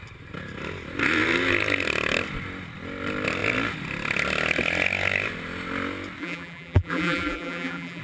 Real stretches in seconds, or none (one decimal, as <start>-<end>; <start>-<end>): 0.0-6.2